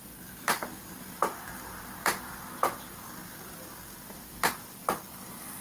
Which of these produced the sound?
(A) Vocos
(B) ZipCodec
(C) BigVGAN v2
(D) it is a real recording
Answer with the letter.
C